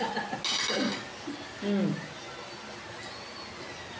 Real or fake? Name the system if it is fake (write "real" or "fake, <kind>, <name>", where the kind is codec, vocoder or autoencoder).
real